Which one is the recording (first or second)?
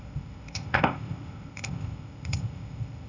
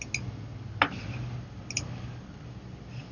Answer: second